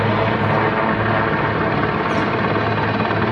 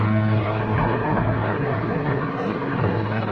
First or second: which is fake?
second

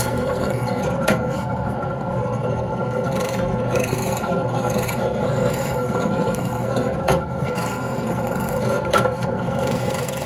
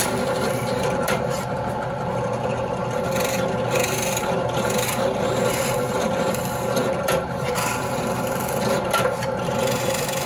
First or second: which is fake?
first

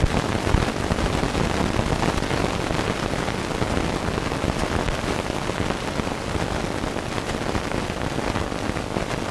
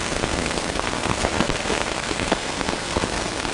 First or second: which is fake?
second